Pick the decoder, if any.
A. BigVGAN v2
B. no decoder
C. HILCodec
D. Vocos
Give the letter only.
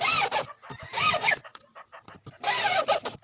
B